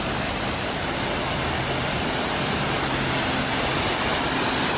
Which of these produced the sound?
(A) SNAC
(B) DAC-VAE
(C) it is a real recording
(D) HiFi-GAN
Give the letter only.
C